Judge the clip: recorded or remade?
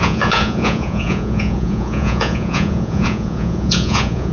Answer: remade